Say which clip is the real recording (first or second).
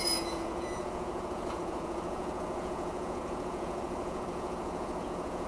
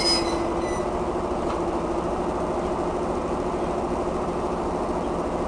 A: second